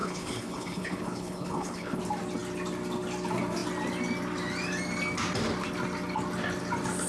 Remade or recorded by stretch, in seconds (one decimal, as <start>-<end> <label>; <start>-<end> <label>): 0.0-2.0 remade; 2.0-7.1 recorded